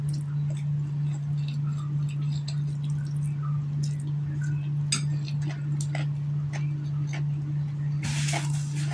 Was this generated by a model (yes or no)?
no